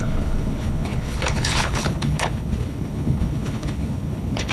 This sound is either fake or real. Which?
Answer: fake